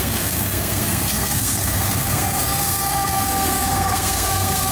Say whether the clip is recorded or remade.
remade